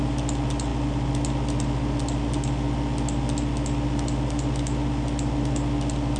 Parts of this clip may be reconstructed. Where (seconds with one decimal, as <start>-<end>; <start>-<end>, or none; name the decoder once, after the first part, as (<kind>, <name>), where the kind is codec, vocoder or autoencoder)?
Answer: none